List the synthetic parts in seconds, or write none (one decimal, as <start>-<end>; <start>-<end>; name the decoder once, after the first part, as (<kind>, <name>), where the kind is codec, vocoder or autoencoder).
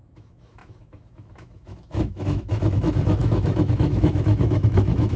0.0-5.2 (autoencoder, DAC-VAE)